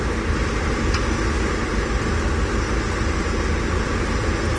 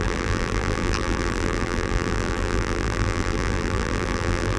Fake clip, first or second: second